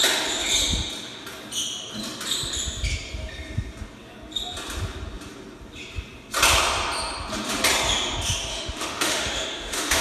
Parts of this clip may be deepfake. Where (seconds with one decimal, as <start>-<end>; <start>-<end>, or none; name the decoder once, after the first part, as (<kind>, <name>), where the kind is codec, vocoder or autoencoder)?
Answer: 8.5-10.0 (autoencoder, DAC-VAE)